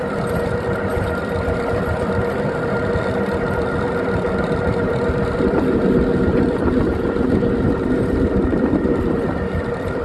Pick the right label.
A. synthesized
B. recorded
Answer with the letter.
A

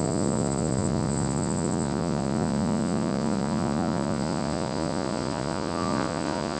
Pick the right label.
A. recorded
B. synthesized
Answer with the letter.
B